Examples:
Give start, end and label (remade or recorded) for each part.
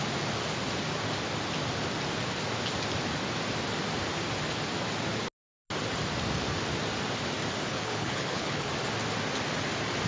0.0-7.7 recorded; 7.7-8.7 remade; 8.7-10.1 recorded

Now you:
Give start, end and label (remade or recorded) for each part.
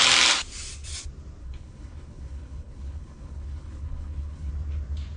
0.0-1.4 recorded; 1.4-4.5 remade; 4.5-5.2 recorded